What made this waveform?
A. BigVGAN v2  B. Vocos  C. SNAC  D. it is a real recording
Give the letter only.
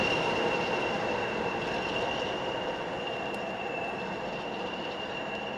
D